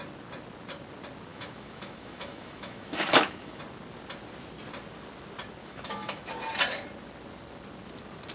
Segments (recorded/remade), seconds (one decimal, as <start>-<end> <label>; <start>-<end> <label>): 0.0-1.3 recorded; 1.3-3.6 remade; 3.6-5.6 recorded; 5.6-6.3 remade; 6.3-8.3 recorded